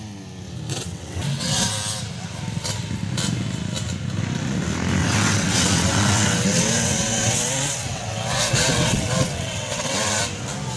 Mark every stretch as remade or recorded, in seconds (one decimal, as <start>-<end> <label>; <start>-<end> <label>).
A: 0.0-0.7 recorded; 0.7-1.7 remade; 1.7-5.0 recorded; 5.0-10.2 remade; 10.2-10.8 recorded